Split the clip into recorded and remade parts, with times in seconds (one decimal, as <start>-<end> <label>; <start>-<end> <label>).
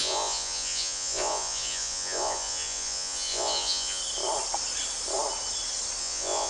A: 0.0-4.0 remade; 4.0-6.0 recorded; 6.0-6.5 remade